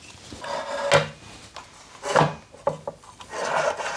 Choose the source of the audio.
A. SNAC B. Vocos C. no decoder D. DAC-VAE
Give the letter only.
C